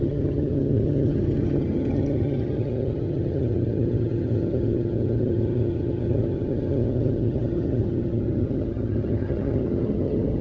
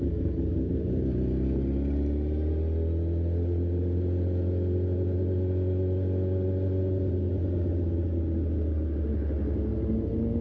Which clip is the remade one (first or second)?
first